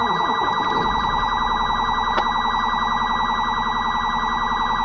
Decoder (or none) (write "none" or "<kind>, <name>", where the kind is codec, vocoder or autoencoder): none